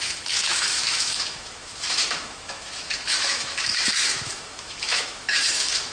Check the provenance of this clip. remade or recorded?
remade